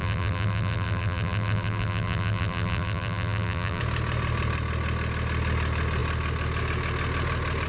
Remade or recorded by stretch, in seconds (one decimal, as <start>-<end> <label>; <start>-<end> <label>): 0.0-3.8 remade; 3.8-7.7 recorded